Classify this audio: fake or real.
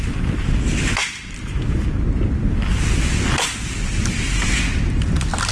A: real